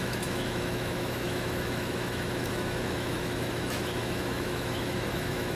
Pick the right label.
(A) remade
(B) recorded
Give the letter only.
A